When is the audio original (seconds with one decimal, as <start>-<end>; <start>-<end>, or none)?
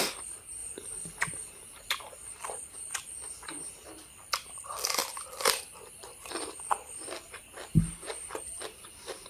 0.6-1.9; 3.5-4.0; 5.0-5.6